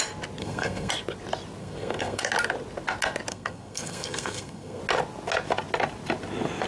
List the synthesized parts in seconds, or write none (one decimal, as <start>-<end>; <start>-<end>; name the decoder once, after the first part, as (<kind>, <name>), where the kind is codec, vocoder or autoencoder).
0.4-0.9 (codec, SNAC); 1.6-2.2; 3.3-4.8